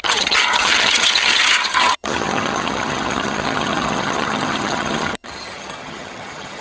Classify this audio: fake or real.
fake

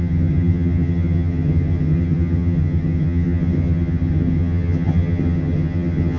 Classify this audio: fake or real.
fake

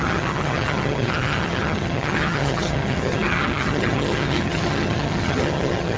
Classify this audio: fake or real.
fake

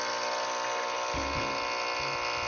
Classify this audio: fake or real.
real